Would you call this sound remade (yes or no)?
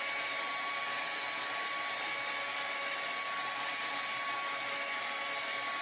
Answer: no